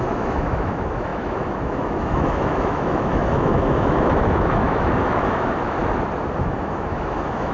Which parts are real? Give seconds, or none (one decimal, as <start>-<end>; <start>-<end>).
5.8-6.4